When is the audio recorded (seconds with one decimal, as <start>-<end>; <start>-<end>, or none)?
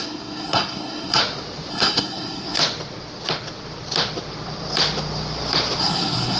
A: 1.2-1.7; 2.6-5.8